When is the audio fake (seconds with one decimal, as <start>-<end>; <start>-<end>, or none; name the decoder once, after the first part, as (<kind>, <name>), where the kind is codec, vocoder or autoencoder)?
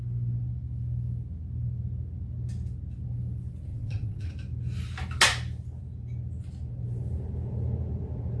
3.7-4.3 (vocoder, WaveNeXt)